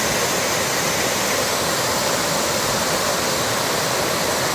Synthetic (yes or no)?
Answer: no